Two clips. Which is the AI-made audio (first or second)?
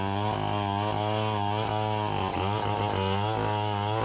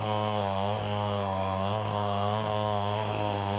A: second